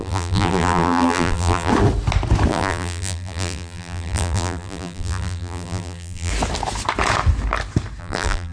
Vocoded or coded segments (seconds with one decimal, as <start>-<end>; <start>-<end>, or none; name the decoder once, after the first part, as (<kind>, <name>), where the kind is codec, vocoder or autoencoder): 0.0-1.7 (vocoder, BigVGAN v2); 2.5-6.3; 8.0-8.5